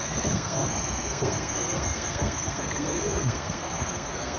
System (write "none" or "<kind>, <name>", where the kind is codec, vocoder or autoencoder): codec, SNAC